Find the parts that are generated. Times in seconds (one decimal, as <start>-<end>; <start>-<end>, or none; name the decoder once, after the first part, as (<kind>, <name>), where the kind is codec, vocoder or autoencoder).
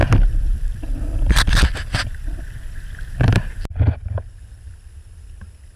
0.0-3.5 (vocoder, BigVGAN v2)